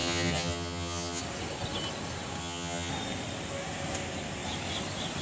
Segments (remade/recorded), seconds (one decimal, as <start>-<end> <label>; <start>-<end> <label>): 0.0-1.2 remade; 1.2-2.4 recorded; 2.4-2.9 remade; 2.9-5.2 recorded